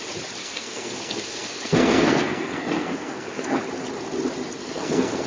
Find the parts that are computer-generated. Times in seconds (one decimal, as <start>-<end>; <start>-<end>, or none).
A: 0.4-3.6; 4.6-5.3